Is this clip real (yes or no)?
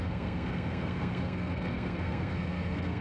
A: no